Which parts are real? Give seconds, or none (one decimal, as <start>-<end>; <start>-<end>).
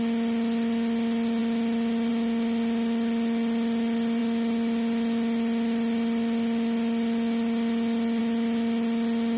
0.0-9.4